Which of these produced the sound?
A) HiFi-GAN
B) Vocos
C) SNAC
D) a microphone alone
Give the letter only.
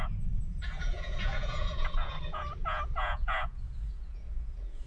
B